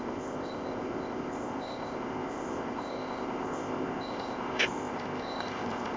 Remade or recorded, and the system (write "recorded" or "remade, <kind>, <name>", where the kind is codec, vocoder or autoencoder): remade, codec, ZipCodec